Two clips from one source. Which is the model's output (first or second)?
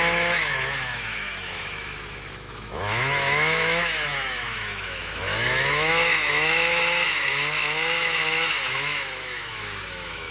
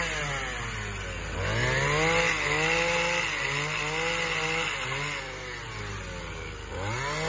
first